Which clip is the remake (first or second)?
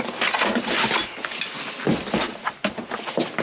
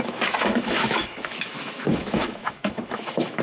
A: second